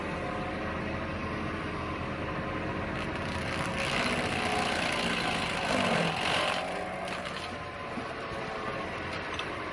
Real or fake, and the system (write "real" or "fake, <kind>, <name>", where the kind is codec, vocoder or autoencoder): real